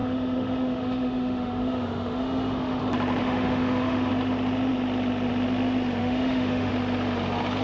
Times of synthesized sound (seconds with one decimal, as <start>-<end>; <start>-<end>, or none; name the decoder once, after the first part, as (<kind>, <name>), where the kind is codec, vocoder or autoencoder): 0.0-2.8 (autoencoder, DAC-VAE); 3.2-4.1; 6.0-6.7